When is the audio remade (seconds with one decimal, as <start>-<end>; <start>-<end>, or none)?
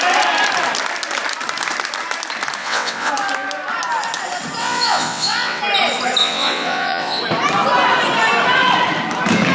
2.6-3.1; 4.6-5.6; 6.2-7.2